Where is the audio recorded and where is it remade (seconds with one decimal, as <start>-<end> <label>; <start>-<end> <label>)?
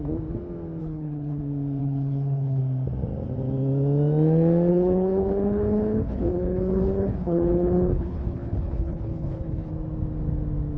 0.0-0.8 recorded; 0.8-1.4 remade; 1.4-1.8 recorded; 1.8-2.6 remade; 2.6-4.7 recorded; 4.7-9.7 remade; 9.7-10.8 recorded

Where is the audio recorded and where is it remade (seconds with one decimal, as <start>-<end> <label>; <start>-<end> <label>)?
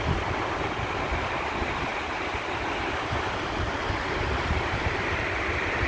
0.0-5.9 recorded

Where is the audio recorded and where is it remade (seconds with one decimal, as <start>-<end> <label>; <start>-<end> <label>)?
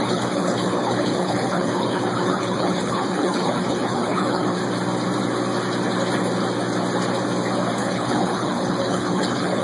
0.0-4.6 remade; 4.6-7.8 recorded; 7.8-9.6 remade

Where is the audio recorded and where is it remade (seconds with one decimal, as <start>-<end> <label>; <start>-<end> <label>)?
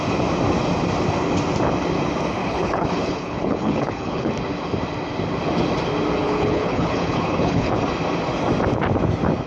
0.0-2.4 recorded; 2.4-4.3 remade; 4.3-6.2 recorded; 6.2-7.8 remade; 7.8-9.5 recorded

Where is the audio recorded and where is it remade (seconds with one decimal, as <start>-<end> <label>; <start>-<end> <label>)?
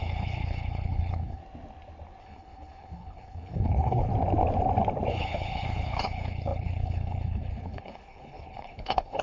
0.0-1.4 remade; 1.4-2.2 recorded; 2.2-4.1 remade; 4.1-5.1 recorded; 5.1-9.2 remade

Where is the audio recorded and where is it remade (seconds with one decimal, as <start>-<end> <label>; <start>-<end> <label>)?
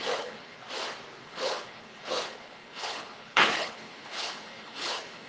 0.0-0.6 remade; 0.6-1.2 recorded; 1.2-5.3 remade